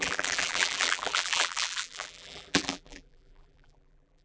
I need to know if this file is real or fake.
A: fake